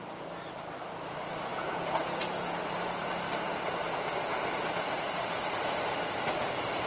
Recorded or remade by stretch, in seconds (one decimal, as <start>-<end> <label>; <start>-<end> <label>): 0.0-1.5 recorded; 1.5-2.6 remade; 2.6-6.9 recorded